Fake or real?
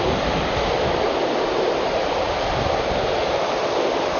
real